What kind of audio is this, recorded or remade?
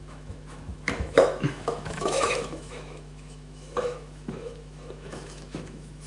remade